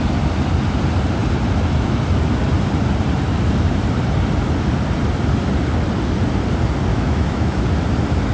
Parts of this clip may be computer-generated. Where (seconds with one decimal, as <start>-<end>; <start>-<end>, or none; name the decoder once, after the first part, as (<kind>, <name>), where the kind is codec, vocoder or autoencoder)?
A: 6.9-7.6 (autoencoder, DAC-VAE)